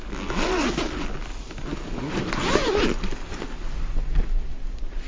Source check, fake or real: real